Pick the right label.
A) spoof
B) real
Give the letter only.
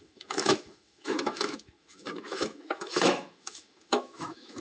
A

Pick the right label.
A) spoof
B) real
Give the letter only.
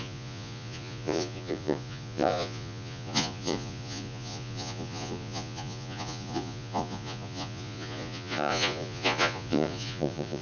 A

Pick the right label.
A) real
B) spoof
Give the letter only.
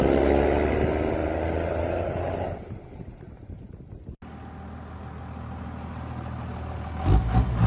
A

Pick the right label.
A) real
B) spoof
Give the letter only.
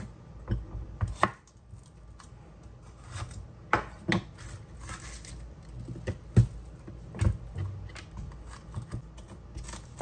A